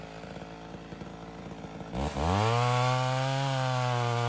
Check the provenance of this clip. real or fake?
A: real